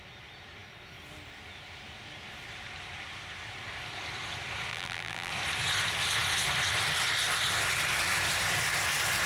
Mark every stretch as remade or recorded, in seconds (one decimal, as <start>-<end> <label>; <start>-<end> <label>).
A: 0.0-4.7 recorded; 4.7-5.3 remade; 5.3-9.3 recorded